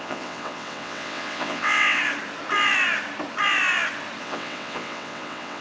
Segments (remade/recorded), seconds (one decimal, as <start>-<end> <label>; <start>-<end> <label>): 0.0-2.0 remade; 2.0-4.2 recorded; 4.2-5.6 remade